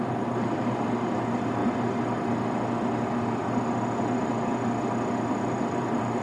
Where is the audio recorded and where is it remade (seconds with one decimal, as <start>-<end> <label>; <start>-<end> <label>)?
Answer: 0.0-1.6 remade; 1.6-5.3 recorded; 5.3-6.2 remade